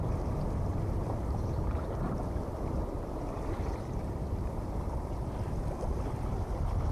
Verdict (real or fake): real